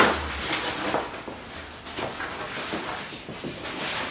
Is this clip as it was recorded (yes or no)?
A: yes